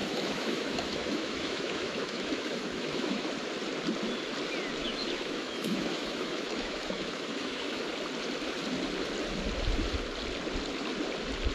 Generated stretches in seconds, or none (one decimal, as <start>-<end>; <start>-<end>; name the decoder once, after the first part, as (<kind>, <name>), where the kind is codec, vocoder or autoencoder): 0.0-3.3 (autoencoder, DAC-VAE); 4.8-7.8

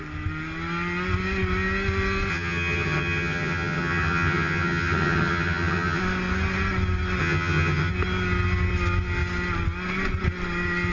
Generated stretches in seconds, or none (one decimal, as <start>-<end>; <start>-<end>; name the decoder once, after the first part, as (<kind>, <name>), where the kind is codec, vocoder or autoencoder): 2.3-6.0 (vocoder, HiFi-GAN); 7.2-7.9